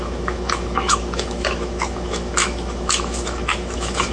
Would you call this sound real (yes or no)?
no